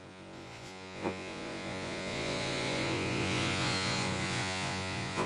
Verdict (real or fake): fake